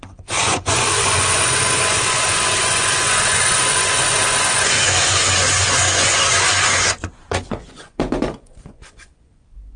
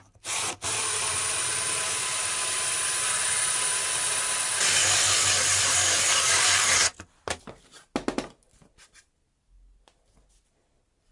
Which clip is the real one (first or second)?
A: second